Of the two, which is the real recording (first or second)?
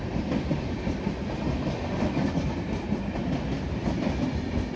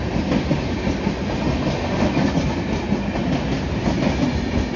second